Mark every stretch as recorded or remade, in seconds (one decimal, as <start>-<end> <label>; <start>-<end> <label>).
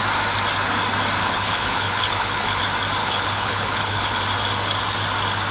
0.0-1.2 recorded; 1.2-2.6 remade; 2.6-3.0 recorded; 3.0-4.2 remade; 4.2-5.5 recorded